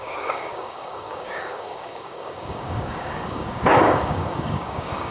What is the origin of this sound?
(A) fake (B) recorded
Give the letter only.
A